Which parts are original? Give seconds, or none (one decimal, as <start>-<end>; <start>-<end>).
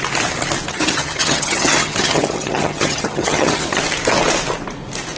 0.0-0.7; 3.8-5.2